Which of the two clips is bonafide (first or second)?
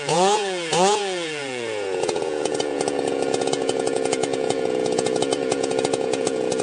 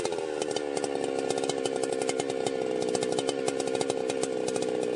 second